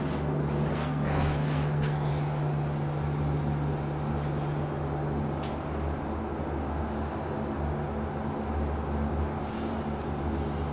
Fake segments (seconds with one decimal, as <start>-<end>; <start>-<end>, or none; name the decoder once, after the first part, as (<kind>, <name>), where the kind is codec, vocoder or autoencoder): 0.7-2.1 (codec, SNAC)

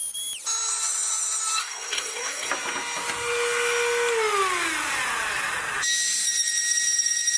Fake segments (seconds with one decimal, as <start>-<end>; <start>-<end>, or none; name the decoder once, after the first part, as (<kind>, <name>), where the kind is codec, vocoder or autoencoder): 1.6-2.5 (codec, SNAC)

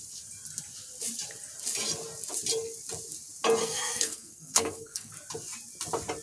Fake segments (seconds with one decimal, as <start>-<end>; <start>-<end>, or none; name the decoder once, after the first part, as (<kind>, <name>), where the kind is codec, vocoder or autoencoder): 3.6-5.1 (codec, SNAC)

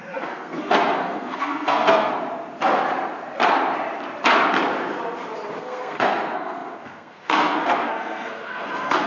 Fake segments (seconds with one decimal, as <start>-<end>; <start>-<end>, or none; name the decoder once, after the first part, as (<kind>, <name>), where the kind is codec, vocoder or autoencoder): 0.0-2.1 (codec, SNAC); 5.6-9.1